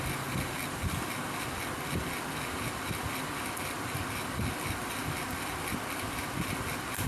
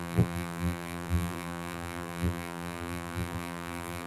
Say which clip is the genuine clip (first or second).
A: first